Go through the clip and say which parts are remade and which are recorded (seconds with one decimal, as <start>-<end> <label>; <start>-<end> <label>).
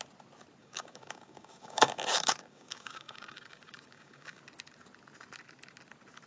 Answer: 0.0-0.6 recorded; 0.6-4.4 remade; 4.4-6.3 recorded